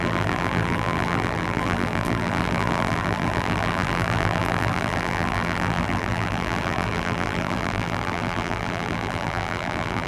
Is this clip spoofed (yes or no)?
yes